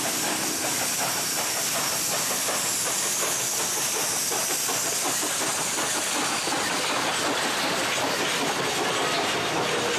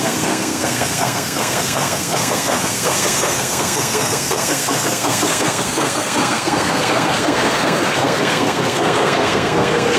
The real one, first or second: first